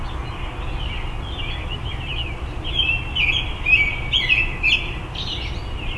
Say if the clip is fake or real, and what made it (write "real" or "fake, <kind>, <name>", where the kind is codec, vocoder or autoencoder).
real